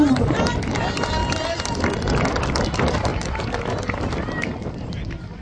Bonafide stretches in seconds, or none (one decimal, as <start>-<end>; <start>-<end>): 0.0-1.2; 1.8-5.4